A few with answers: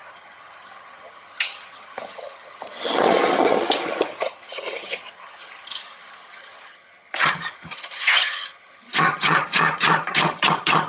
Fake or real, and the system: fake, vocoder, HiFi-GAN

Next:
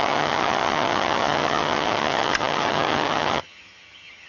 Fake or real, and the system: fake, vocoder, HiFi-GAN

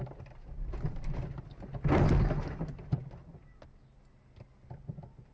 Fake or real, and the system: real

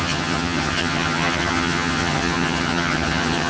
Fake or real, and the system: fake, vocoder, HiFi-GAN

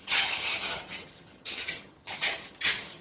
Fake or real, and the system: fake, vocoder, HiFi-GAN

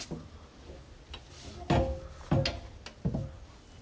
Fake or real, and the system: real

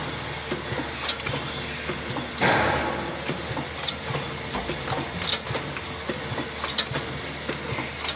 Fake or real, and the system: real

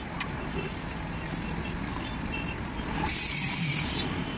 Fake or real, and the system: real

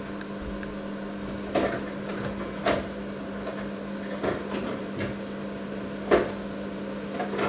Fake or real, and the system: real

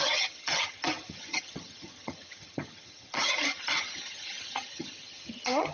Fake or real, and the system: fake, vocoder, HiFi-GAN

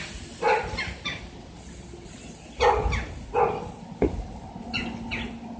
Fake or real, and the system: real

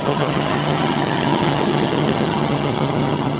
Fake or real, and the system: fake, vocoder, HiFi-GAN